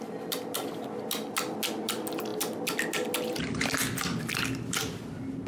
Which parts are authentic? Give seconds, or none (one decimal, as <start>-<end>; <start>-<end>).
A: 0.0-5.5